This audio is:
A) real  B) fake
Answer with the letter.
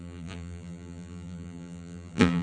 B